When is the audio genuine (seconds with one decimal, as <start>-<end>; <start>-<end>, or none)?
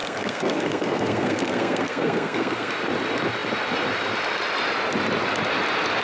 2.7-6.0